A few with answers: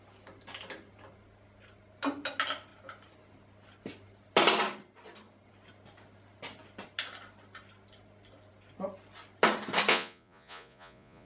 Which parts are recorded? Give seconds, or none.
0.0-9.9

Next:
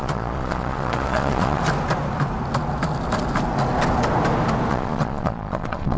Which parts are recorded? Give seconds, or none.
1.6-4.7

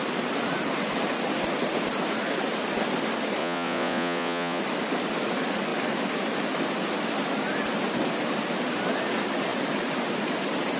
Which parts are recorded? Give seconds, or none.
0.0-3.4; 4.6-10.8

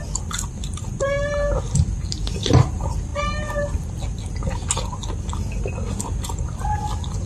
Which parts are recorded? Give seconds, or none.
0.0-7.3

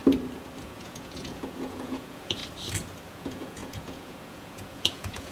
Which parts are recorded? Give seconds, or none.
0.0-0.6; 2.4-3.1

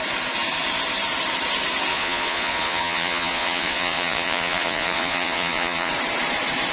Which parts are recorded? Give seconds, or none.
0.0-1.9; 5.9-6.7

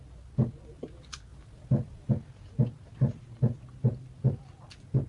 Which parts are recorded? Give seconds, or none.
0.0-5.1